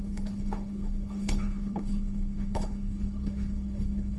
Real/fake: fake